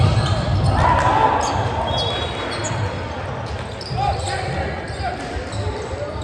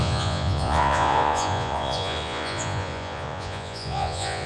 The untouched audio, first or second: first